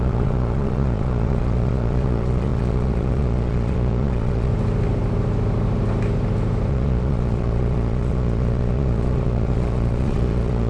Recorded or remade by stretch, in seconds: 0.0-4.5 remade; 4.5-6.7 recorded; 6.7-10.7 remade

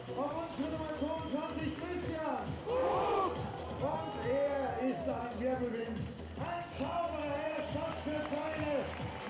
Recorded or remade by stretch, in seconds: 0.0-9.3 recorded

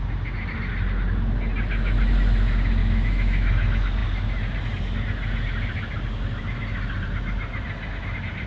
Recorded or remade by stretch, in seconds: 0.0-2.8 recorded; 2.8-3.5 remade; 3.5-8.5 recorded

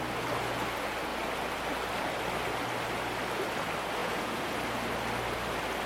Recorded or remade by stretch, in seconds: 0.0-4.0 recorded; 4.0-4.5 remade; 4.5-5.9 recorded

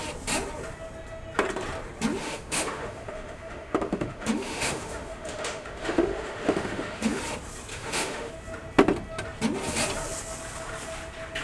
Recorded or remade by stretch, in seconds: 0.0-2.2 recorded; 2.2-7.2 remade; 7.2-7.7 recorded; 7.7-8.3 remade; 8.3-11.4 recorded

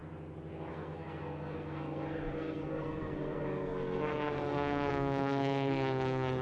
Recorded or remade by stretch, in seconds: 0.0-0.7 recorded; 0.7-6.4 remade

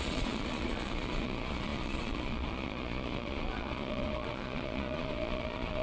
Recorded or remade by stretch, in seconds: 0.0-5.8 remade